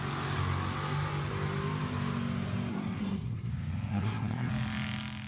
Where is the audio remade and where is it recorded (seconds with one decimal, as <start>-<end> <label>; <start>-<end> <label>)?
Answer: 0.0-2.7 recorded; 2.7-3.5 remade; 3.5-3.9 recorded; 3.9-4.5 remade; 4.5-5.3 recorded